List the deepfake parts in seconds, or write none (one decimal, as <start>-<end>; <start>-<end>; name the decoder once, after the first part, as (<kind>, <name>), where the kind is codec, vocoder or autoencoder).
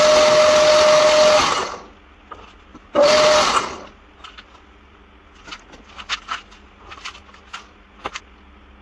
none